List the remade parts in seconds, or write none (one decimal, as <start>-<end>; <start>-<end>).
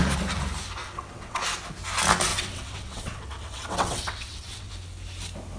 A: 0.8-1.4; 2.3-4.7